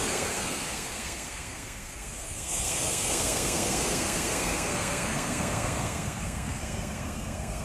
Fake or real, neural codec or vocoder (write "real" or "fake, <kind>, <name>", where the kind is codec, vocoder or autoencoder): fake, codec, SNAC